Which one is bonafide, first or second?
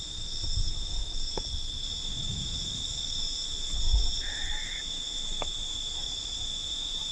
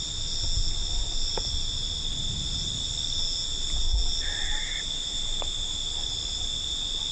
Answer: second